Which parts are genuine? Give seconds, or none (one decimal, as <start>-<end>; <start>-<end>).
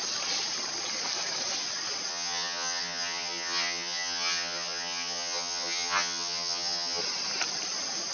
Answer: 0.0-2.1; 7.0-8.1